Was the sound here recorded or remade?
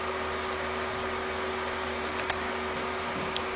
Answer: recorded